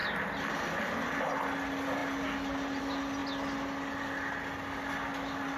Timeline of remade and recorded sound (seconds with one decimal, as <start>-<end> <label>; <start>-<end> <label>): 0.0-5.6 recorded